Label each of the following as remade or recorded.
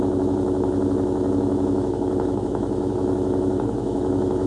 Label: remade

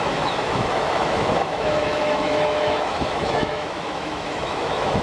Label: remade